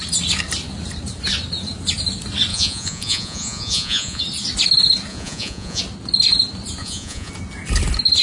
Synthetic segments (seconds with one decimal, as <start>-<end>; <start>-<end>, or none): 2.5-4.2; 5.1-5.8; 6.8-7.3